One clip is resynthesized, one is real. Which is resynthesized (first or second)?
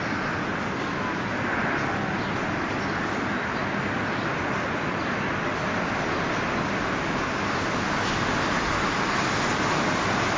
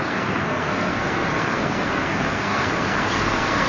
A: second